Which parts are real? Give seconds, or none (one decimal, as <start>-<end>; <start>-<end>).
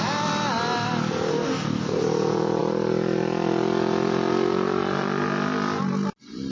0.0-1.3; 2.0-6.5